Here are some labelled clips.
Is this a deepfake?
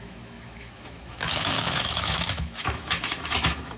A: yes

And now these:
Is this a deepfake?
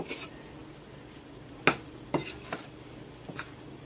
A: no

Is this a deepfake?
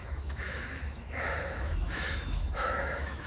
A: yes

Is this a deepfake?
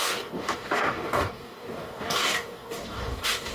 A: yes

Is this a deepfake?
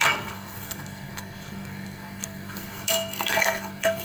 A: yes